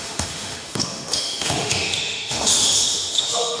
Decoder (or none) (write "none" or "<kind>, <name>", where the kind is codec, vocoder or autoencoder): autoencoder, DAC-VAE